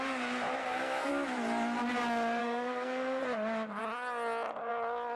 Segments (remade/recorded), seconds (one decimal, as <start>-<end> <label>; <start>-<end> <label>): 0.0-0.6 recorded; 0.6-1.1 remade; 1.1-2.4 recorded; 2.4-3.2 remade; 3.2-5.2 recorded